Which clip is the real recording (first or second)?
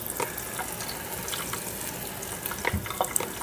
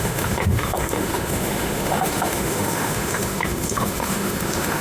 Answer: first